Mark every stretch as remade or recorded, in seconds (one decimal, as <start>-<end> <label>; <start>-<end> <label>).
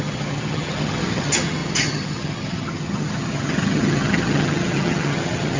0.0-5.6 remade